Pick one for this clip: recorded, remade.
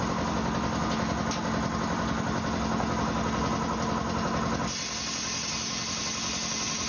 recorded